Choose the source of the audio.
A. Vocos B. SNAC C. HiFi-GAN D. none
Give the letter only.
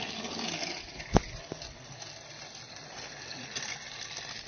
D